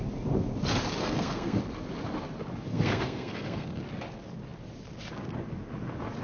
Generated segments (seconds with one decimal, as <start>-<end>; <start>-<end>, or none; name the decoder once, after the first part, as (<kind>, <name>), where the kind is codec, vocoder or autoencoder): 1.0-1.6 (codec, SNAC); 2.7-3.8